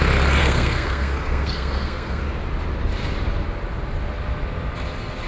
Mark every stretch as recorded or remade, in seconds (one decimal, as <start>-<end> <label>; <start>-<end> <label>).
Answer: 0.0-0.4 recorded; 0.4-2.2 remade; 2.2-5.3 recorded